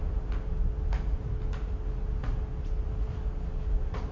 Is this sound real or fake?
real